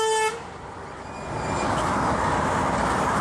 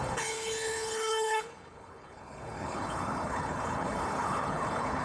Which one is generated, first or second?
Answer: second